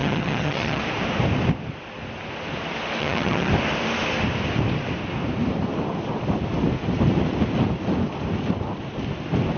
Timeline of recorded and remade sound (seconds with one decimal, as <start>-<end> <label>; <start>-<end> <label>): 0.0-0.8 remade; 0.8-3.0 recorded; 3.0-3.5 remade; 3.5-9.6 recorded